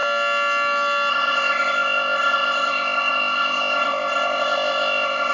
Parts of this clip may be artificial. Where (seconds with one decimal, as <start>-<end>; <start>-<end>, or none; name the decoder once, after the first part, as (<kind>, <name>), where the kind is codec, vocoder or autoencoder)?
1.1-5.3 (codec, ZipCodec)